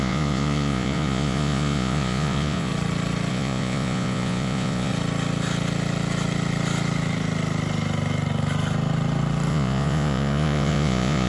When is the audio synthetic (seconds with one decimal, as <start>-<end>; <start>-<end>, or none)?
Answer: 0.0-2.7; 3.3-4.9; 9.5-11.3